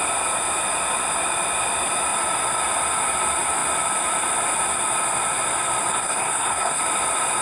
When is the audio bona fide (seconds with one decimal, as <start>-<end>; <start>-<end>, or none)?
0.0-5.9; 6.8-7.4